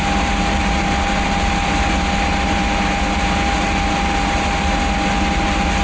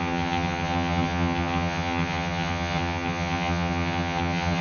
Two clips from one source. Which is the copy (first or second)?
second